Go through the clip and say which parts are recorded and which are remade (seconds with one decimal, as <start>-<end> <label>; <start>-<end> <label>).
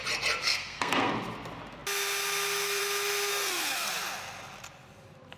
0.0-0.4 recorded; 0.4-1.1 remade; 1.1-3.3 recorded; 3.3-3.9 remade; 3.9-5.4 recorded